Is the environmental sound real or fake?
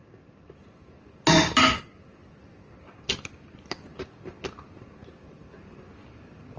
real